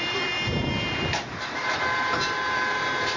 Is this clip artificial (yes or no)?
yes